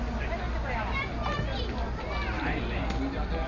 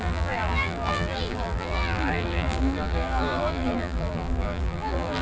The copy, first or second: second